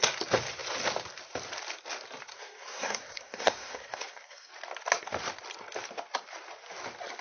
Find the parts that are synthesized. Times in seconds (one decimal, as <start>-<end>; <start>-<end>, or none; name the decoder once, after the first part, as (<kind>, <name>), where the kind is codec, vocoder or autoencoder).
2.3-4.5 (codec, SNAC)